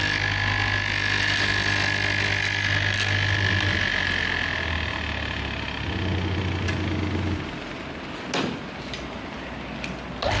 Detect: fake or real real